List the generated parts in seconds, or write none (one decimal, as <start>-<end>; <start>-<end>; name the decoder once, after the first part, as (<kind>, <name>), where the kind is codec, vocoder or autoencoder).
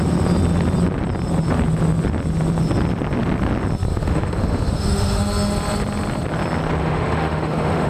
3.9-5.2 (autoencoder, DAC-VAE); 6.8-7.9